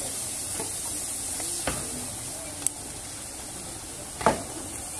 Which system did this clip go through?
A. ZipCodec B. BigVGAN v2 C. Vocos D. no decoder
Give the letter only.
D